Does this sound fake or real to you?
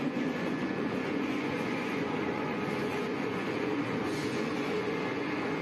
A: fake